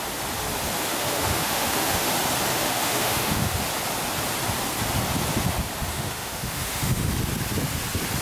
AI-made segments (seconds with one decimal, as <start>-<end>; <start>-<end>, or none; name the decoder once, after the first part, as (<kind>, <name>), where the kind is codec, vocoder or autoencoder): 0.9-2.1 (autoencoder, DAC-VAE); 2.5-3.6; 5.9-7.1